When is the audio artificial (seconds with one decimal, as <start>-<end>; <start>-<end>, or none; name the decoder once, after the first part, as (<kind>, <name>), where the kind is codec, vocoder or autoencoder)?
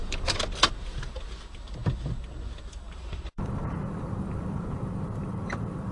0.0-5.9 (vocoder, BigVGAN v2)